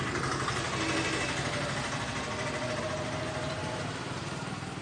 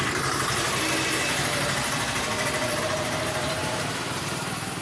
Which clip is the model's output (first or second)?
second